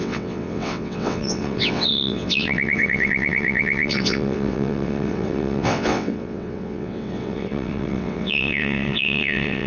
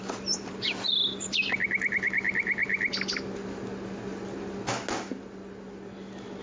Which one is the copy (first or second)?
first